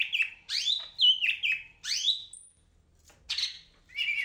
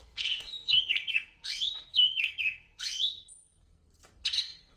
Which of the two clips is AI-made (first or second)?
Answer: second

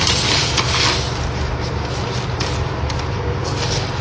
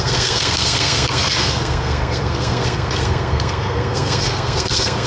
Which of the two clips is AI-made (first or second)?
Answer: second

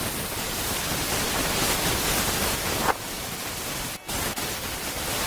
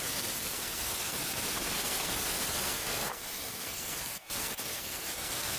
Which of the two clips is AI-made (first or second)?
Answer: second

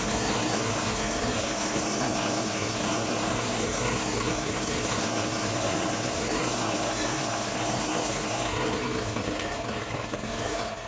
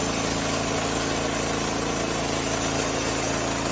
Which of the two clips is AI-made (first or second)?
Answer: first